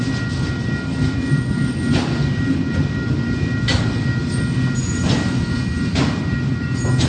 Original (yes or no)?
yes